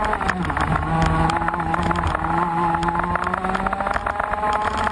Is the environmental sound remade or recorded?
recorded